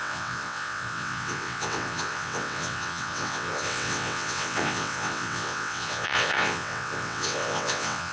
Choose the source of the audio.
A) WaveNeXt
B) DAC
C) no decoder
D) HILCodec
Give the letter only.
A